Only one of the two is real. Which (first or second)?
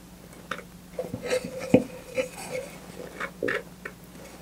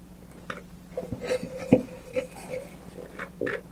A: first